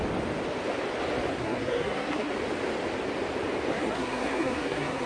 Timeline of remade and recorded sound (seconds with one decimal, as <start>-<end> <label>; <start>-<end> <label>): 0.0-1.3 recorded; 1.3-2.3 remade; 2.3-3.7 recorded; 3.7-5.1 remade